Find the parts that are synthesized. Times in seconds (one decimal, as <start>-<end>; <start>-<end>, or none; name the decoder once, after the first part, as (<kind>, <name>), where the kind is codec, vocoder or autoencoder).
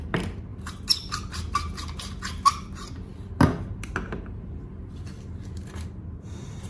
none